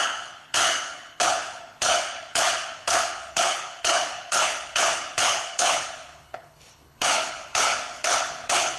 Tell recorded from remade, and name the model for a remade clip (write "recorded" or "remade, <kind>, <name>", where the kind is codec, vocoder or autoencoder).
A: remade, codec, HILCodec